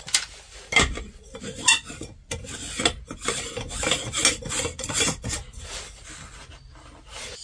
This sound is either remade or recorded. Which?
recorded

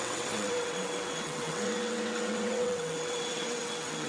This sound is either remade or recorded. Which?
remade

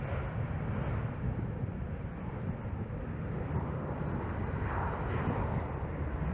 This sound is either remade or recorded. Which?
recorded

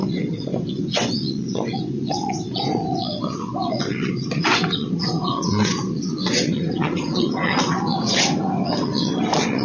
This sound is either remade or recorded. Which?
remade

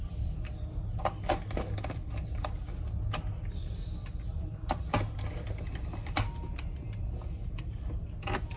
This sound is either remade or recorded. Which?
recorded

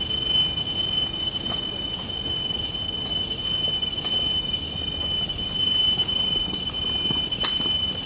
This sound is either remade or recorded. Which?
recorded